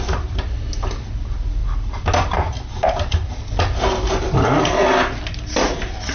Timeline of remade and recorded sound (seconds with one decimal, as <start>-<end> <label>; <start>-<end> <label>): 0.0-6.1 recorded